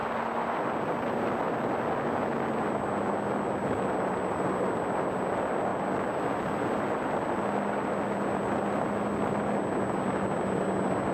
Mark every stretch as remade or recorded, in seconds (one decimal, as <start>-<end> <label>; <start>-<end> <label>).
0.0-11.1 recorded